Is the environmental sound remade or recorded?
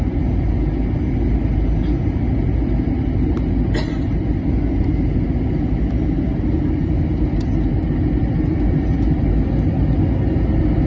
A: recorded